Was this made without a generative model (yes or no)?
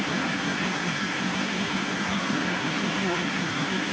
no